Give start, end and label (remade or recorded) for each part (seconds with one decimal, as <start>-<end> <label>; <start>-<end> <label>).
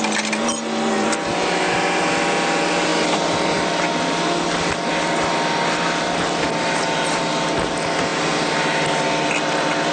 0.0-9.9 recorded